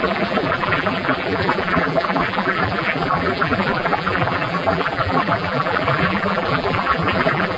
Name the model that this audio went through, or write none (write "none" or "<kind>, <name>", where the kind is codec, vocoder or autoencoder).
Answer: vocoder, BigVGAN v2